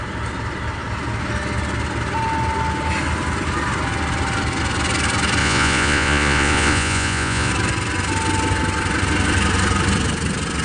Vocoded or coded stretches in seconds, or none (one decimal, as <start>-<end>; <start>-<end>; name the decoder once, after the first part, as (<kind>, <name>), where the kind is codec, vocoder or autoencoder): 5.4-7.5 (vocoder, Vocos)